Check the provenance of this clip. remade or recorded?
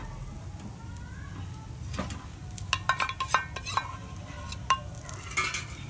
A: recorded